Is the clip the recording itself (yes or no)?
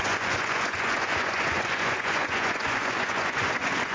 no